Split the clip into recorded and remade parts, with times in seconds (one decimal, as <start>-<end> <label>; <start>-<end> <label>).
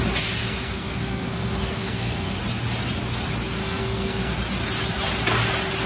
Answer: 0.0-0.4 recorded; 0.4-2.4 remade; 2.4-3.6 recorded; 3.6-4.3 remade; 4.3-5.9 recorded